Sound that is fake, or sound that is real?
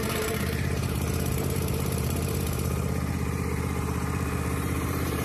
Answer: fake